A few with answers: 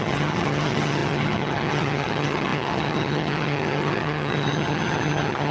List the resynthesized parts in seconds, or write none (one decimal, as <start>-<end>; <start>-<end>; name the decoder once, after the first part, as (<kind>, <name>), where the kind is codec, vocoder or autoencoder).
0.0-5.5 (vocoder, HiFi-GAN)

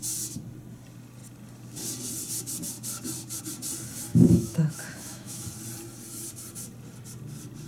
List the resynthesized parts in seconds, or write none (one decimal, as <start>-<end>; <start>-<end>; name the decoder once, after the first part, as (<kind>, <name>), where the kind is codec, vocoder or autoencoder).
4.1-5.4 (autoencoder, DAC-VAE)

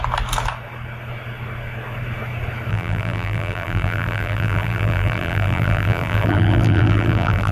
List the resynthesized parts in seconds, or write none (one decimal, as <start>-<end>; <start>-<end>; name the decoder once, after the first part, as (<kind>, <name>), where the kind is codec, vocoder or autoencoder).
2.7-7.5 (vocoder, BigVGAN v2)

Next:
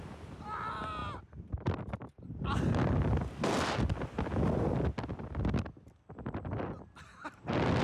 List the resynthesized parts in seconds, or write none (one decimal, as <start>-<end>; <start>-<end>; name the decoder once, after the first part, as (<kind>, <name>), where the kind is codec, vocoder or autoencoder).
none